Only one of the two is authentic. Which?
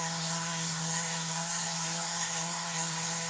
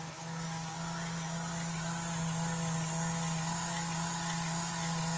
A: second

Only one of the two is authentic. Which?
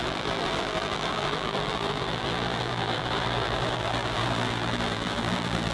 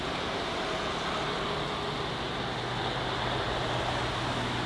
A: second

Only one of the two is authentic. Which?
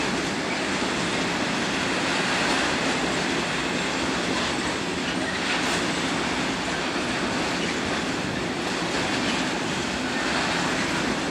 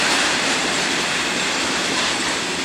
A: first